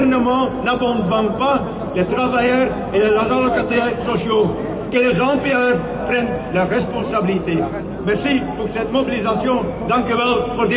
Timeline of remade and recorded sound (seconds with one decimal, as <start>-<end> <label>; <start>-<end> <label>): 0.0-3.3 recorded; 3.3-7.0 remade; 7.0-9.4 recorded; 9.4-10.8 remade